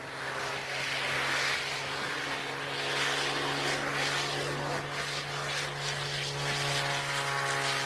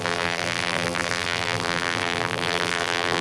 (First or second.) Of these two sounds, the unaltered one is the first